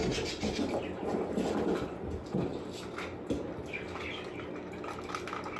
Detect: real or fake real